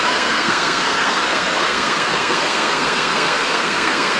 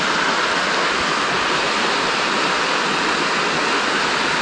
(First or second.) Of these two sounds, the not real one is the first